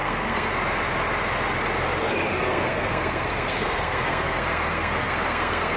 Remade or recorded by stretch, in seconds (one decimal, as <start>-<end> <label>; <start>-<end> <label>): 0.0-0.5 remade; 0.5-2.3 recorded; 2.3-5.8 remade

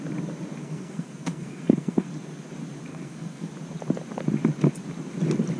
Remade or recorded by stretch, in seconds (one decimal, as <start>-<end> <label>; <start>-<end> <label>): 0.0-0.6 recorded; 0.6-2.1 remade; 2.1-2.9 recorded; 2.9-3.5 remade; 3.5-5.6 recorded